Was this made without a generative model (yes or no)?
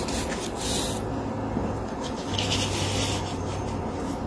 yes